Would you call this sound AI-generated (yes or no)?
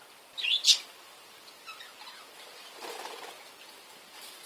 no